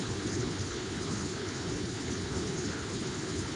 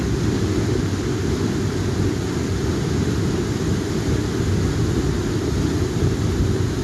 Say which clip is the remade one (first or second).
first